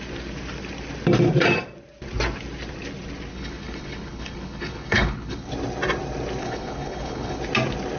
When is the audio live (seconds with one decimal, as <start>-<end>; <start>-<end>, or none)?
0.0-3.3; 5.5-6.4; 7.4-8.0

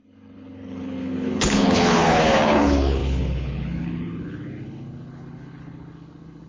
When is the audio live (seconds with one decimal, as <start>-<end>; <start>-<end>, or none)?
none

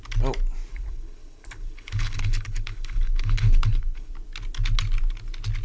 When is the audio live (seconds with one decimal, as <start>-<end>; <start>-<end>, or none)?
0.0-0.7; 4.1-5.6

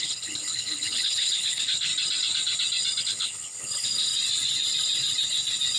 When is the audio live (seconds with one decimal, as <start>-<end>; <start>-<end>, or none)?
1.9-3.0; 4.1-5.8

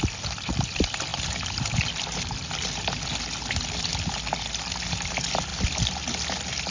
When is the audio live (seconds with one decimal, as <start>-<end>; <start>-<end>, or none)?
0.0-6.7